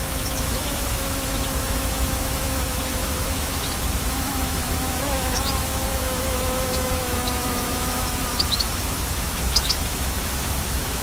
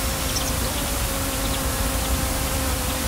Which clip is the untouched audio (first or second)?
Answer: second